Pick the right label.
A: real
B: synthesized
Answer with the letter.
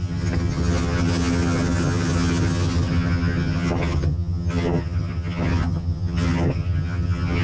B